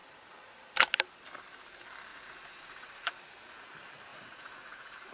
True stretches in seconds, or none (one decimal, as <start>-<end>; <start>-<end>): 0.0-2.1; 3.2-4.1